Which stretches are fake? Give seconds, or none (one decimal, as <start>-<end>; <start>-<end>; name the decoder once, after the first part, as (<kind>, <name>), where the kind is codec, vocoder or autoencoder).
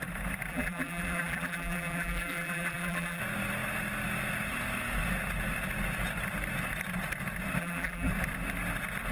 0.5-3.2 (vocoder, BigVGAN v2); 7.6-8.1